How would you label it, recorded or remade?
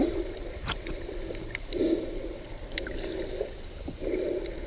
recorded